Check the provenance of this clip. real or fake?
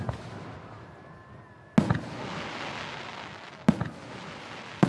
real